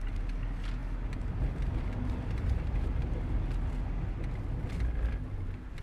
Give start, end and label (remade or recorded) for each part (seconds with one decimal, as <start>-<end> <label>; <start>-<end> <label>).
0.0-5.8 recorded